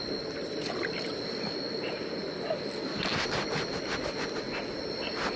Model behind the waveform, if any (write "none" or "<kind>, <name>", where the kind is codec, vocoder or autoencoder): none